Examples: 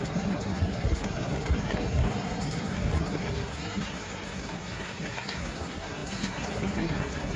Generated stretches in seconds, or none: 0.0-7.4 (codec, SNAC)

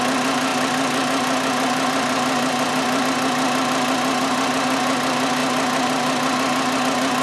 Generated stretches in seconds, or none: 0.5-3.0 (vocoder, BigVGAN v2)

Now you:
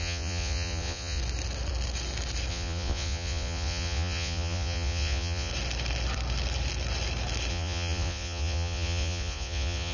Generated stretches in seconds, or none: 0.0-1.2 (vocoder, Vocos); 2.5-5.5; 7.5-9.9

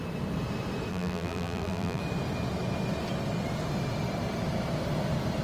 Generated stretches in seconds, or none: 0.9-2.0 (vocoder, BigVGAN v2)

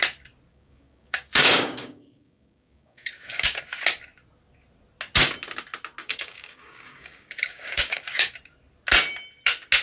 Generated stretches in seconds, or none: 0.5-3.6 (codec, DAC); 6.0-8.3